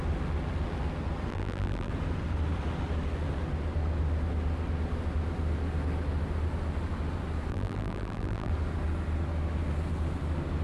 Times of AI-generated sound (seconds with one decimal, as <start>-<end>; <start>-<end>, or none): 1.3-1.9; 7.5-8.5